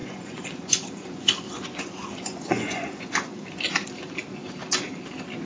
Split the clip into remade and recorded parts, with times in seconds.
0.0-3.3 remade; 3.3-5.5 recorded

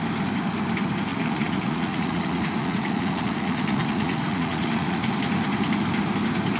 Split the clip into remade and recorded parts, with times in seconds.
0.0-1.1 recorded; 1.1-5.1 remade; 5.1-6.6 recorded

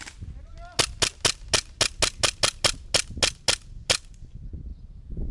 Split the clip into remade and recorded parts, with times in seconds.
0.0-4.7 recorded; 4.7-5.3 remade

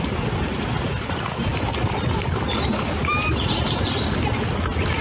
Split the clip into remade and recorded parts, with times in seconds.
0.0-5.0 recorded

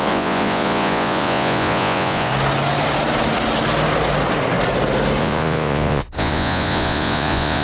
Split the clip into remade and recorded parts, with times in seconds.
0.0-2.3 remade; 2.3-5.2 recorded; 5.2-7.6 remade

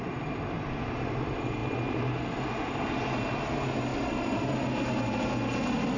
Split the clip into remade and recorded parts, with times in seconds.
0.0-6.0 recorded